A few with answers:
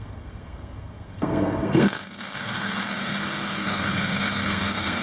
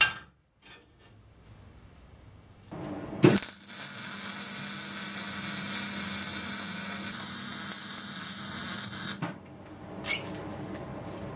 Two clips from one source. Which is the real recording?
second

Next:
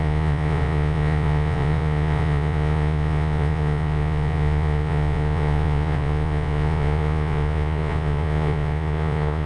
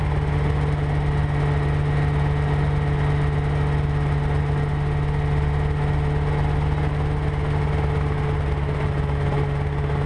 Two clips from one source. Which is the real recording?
second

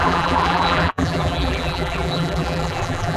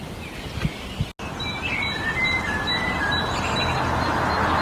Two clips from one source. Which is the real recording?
second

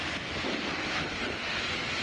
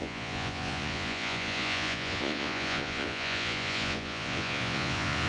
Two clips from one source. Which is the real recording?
first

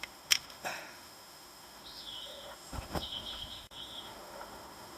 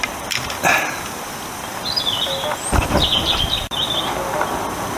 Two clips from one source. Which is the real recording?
second